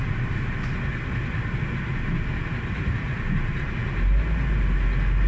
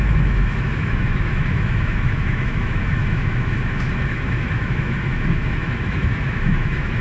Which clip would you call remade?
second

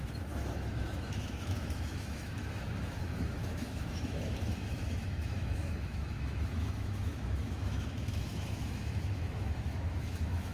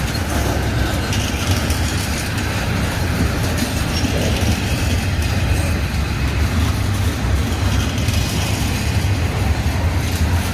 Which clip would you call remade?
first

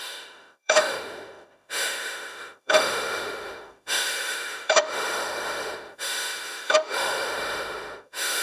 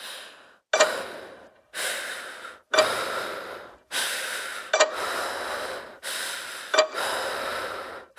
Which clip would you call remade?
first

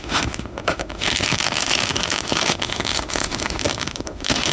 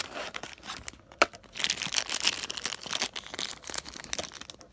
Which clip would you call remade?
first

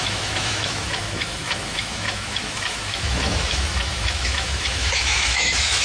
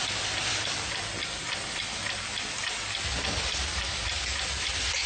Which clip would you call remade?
first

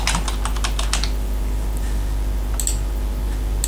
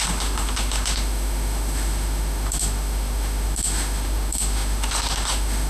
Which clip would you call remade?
second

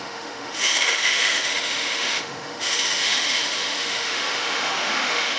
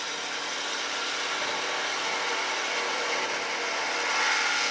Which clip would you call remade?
first